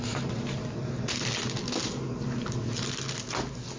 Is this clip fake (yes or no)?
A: no